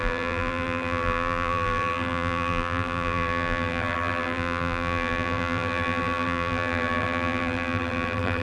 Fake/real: fake